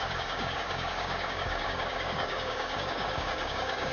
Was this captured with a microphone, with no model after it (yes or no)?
no